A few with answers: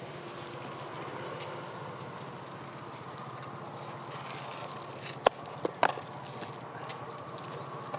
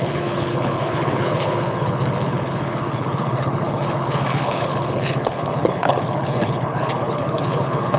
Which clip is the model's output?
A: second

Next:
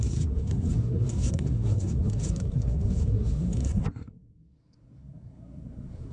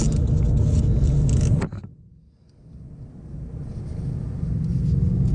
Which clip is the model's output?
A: first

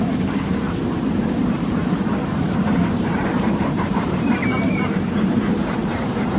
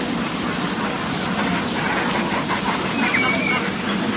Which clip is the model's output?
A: first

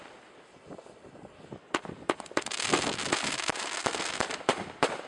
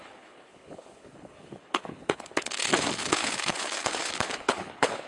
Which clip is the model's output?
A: second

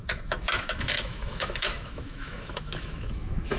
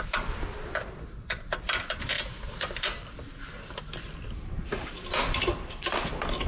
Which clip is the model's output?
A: first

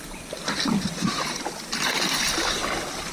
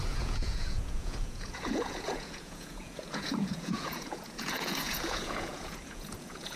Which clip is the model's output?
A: second